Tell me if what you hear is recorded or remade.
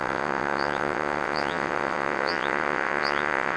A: remade